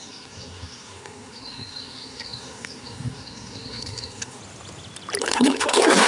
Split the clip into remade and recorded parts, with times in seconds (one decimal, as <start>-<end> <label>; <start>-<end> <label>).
0.0-4.4 remade; 4.4-5.2 recorded; 5.2-6.1 remade